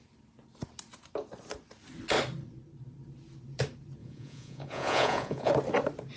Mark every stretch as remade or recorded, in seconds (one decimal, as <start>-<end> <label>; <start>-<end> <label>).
0.0-4.0 recorded; 4.0-5.5 remade; 5.5-6.2 recorded

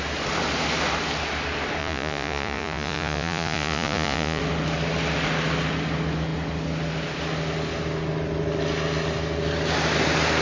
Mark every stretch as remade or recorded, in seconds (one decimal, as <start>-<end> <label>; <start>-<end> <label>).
0.0-1.8 recorded; 1.8-4.4 remade; 4.4-10.4 recorded